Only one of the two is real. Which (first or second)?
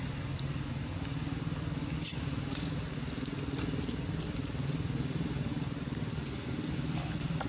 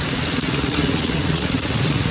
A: first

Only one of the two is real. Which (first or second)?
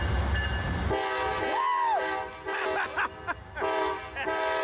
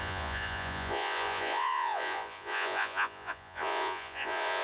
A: first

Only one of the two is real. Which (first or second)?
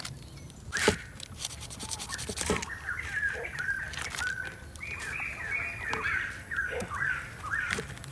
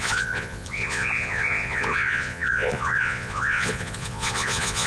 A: first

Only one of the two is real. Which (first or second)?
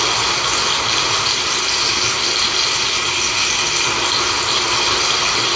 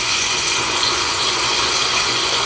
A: first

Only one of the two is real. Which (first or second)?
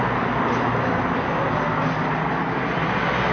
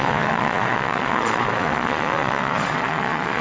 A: first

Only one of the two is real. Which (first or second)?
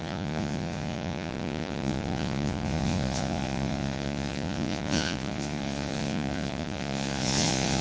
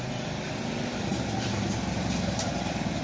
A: second